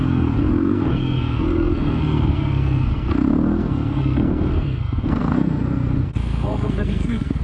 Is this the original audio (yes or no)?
no